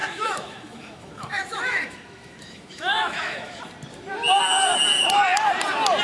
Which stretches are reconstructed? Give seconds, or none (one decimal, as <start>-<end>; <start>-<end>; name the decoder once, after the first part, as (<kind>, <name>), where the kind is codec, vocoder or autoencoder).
0.0-3.6 (autoencoder, DAC-VAE)